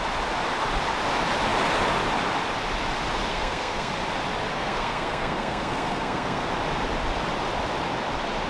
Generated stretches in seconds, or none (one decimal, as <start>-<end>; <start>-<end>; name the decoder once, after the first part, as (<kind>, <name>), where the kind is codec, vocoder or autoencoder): 3.3-3.9 (codec, SNAC); 4.5-6.5